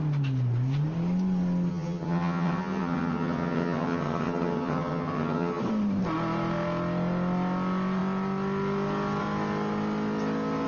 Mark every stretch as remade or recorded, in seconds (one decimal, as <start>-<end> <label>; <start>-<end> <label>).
0.0-1.7 recorded; 1.7-5.6 remade; 5.6-10.7 recorded